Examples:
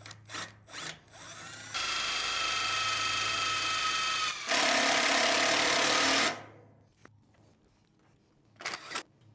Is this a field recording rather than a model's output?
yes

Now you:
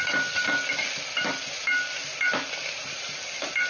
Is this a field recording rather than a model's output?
yes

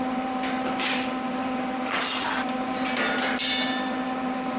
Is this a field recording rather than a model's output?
no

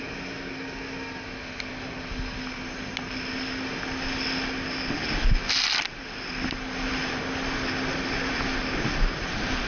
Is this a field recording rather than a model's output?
yes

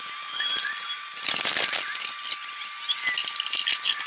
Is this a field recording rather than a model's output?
yes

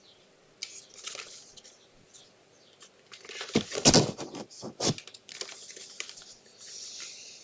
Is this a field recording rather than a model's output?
yes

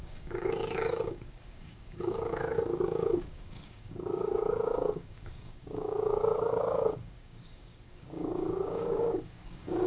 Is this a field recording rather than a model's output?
no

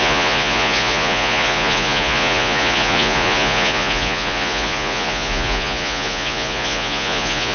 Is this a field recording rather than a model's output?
no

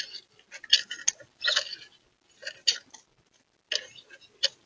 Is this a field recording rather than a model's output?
yes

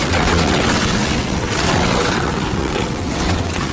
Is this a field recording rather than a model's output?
no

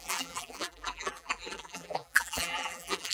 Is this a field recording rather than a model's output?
no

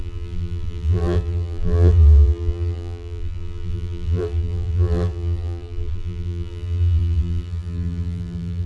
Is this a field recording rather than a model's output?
no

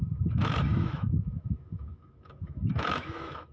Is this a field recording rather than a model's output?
no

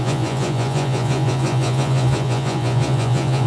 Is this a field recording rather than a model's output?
no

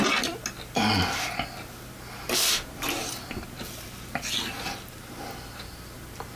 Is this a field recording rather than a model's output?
yes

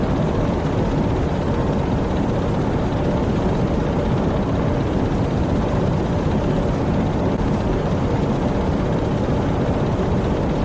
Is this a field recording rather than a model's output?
yes